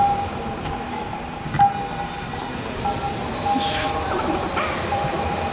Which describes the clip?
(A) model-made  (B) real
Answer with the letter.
B